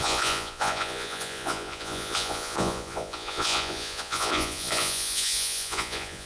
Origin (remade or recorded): remade